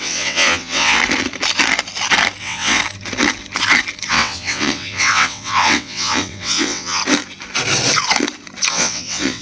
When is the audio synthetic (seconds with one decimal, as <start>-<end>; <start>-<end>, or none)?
0.0-1.0; 2.4-2.8; 4.1-7.0; 8.7-9.4